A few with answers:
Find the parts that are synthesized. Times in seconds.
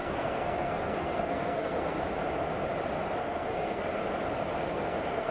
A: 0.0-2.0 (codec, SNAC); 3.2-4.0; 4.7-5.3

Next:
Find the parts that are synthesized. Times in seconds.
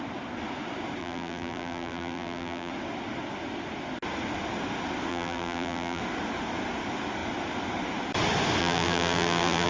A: 1.0-2.7 (vocoder, BigVGAN v2); 5.1-6.0; 8.6-9.7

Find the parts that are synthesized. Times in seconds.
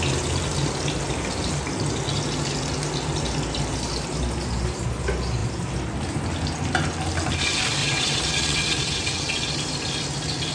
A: 7.8-9.5 (vocoder, WaveNeXt)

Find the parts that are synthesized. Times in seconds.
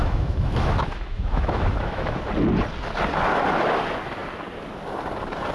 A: 0.0-2.2 (autoencoder, DAC-VAE)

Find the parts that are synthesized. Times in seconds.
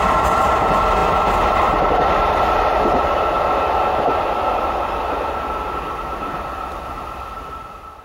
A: none